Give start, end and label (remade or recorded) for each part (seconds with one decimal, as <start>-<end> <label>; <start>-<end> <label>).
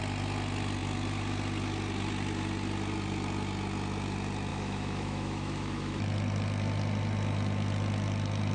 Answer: 0.0-4.5 recorded; 4.5-6.0 remade; 6.0-8.5 recorded